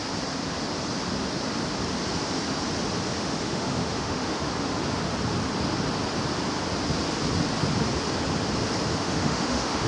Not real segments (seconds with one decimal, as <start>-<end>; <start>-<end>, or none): 3.1-4.4; 8.9-9.9